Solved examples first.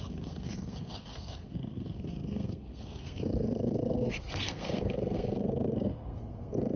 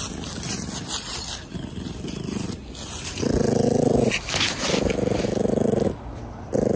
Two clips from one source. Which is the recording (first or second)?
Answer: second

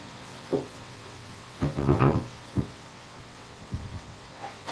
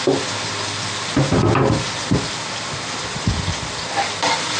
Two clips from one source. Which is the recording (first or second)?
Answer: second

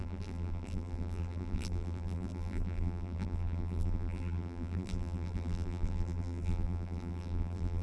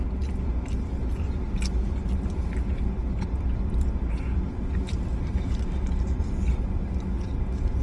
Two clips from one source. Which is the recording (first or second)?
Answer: second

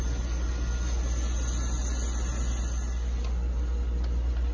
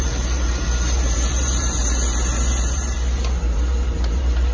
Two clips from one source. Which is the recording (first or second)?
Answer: first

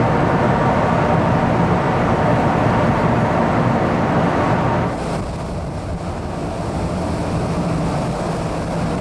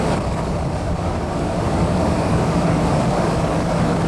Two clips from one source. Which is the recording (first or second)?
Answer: first